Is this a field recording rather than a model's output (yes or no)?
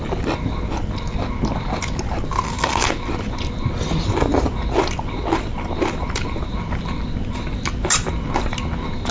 yes